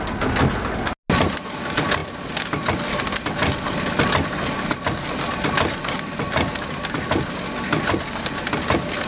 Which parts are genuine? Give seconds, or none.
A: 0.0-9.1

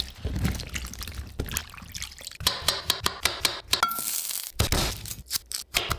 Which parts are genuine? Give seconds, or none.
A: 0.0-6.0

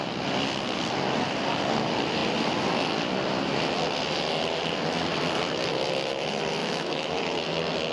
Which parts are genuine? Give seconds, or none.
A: 0.0-6.6; 7.2-7.9

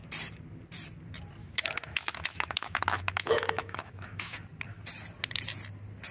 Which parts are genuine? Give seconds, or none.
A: 0.0-1.4; 4.4-6.1

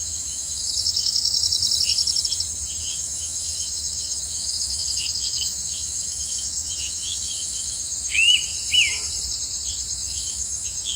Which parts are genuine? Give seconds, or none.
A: 1.6-2.9; 8.5-9.9

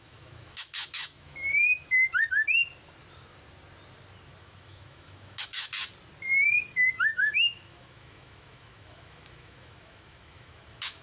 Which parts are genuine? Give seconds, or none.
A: 2.1-4.4; 5.7-6.3